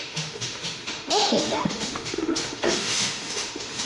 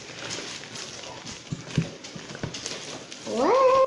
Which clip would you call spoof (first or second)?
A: first